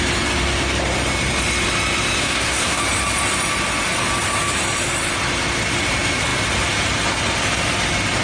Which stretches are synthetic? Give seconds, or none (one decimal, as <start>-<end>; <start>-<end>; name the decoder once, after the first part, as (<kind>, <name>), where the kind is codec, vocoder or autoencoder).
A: 2.2-2.8 (codec, SNAC)